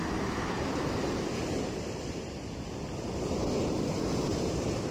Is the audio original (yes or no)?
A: no